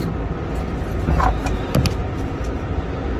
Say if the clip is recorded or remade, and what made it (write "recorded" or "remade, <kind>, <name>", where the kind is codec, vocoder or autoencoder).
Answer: recorded